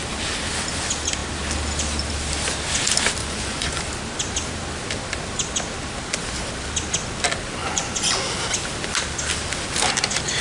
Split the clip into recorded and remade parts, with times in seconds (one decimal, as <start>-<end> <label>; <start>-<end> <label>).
0.0-3.2 recorded; 3.2-3.8 remade; 3.8-7.6 recorded; 7.6-8.2 remade; 8.2-10.4 recorded

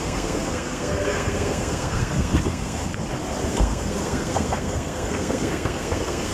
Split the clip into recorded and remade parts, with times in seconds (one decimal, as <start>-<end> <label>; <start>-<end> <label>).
0.0-2.9 remade; 2.9-3.5 recorded; 3.5-6.3 remade

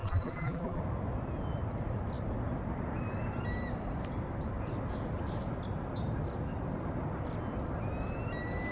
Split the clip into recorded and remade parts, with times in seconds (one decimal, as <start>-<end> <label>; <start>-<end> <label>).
0.0-0.8 remade; 0.8-8.7 recorded

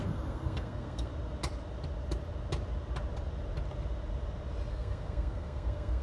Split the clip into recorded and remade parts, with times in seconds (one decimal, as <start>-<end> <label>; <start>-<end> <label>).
0.0-1.1 remade; 1.1-4.7 recorded; 4.7-6.0 remade